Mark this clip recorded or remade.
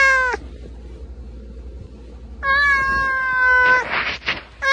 recorded